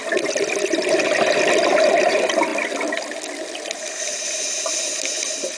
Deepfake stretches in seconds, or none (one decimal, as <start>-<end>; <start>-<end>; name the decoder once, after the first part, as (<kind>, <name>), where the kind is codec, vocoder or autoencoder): 2.1-2.5 (vocoder, BigVGAN v2); 3.5-5.6